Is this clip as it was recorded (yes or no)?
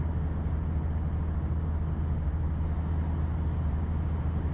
yes